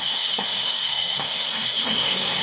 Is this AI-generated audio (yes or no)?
yes